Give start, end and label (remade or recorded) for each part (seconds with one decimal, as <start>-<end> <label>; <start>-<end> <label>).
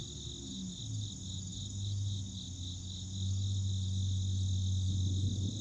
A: 0.0-5.6 recorded